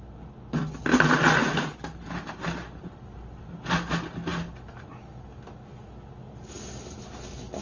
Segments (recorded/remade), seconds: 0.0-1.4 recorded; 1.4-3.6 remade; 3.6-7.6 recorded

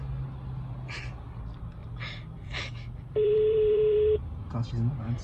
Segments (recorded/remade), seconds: 0.0-1.8 recorded; 1.8-4.7 remade; 4.7-5.2 recorded

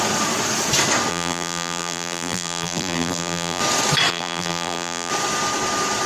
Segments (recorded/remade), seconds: 0.0-1.1 recorded; 1.1-3.6 remade; 3.6-4.1 recorded; 4.1-5.1 remade; 5.1-6.1 recorded

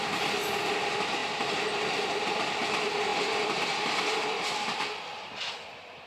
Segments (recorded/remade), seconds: 0.0-6.1 recorded

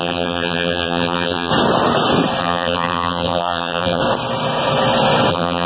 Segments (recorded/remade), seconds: 0.0-1.5 remade; 1.5-2.4 recorded; 2.4-4.0 remade; 4.0-5.3 recorded; 5.3-5.7 remade

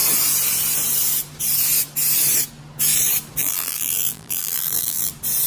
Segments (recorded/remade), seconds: 0.0-3.4 recorded; 3.4-5.1 remade; 5.1-5.5 recorded